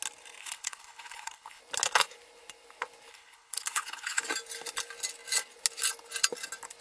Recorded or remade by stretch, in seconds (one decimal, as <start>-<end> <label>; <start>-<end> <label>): 0.0-0.4 recorded; 0.4-1.6 remade; 1.6-3.1 recorded; 3.1-4.2 remade; 4.2-6.8 recorded